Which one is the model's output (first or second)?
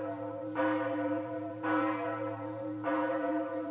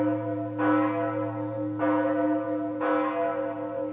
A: first